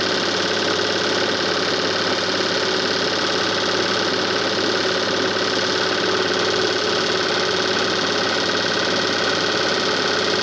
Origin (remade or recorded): recorded